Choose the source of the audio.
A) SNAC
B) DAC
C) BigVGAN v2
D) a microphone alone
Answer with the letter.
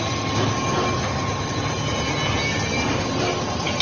D